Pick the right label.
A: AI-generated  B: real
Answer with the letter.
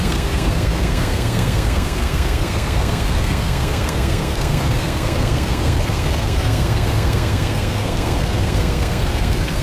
A